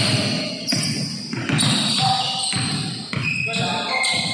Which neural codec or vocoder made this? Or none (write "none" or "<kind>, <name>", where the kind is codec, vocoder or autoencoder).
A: none